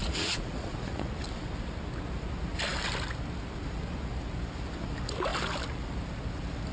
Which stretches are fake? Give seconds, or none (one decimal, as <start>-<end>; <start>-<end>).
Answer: 0.0-1.1